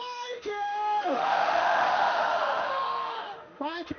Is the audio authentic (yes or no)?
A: no